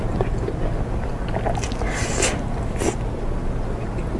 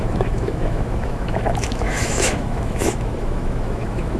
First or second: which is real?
first